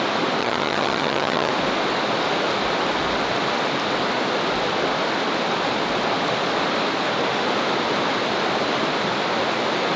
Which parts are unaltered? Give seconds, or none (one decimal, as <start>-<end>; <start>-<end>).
0.0-0.4; 1.5-10.0

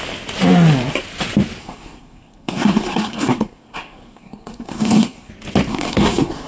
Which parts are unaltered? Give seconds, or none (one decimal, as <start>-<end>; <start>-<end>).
0.0-1.6; 5.3-5.7

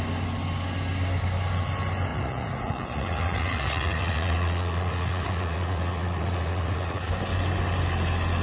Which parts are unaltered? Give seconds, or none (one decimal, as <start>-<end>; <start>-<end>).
0.0-2.1; 7.1-8.4

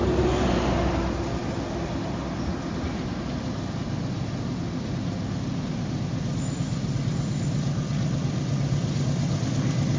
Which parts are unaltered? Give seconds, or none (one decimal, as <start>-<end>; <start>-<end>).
0.0-10.0

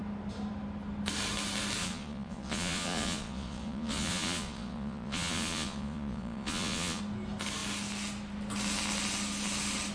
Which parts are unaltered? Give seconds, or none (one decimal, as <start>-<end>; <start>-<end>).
0.0-1.8; 7.0-9.9